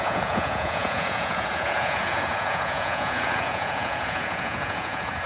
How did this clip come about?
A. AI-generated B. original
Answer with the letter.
A